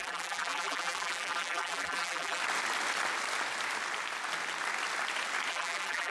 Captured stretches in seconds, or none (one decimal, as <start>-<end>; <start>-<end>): 2.4-5.5